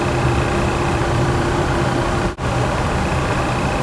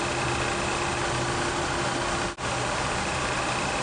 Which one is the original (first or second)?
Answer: second